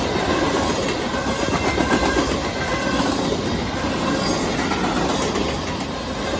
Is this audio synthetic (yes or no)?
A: no